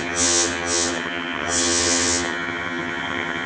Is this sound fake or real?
fake